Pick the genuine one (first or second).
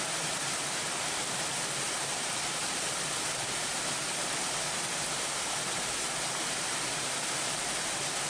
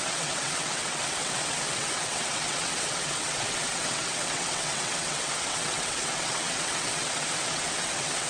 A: first